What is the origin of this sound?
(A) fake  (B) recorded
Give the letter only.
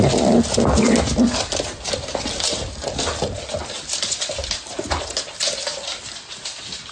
B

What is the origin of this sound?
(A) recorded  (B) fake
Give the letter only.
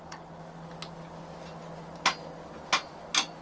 A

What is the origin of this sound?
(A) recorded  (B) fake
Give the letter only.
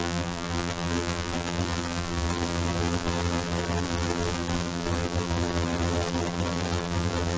B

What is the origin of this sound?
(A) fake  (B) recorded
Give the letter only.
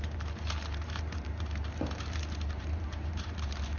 A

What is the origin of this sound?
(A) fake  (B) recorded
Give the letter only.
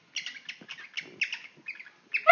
B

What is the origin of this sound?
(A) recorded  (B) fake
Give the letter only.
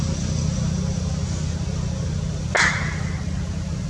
A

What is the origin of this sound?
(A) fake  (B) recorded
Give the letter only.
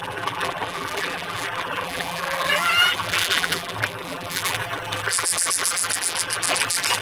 A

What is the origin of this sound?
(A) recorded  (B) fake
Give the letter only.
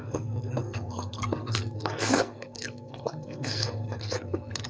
B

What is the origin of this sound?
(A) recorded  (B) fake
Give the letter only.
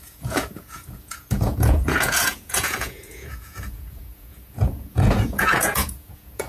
B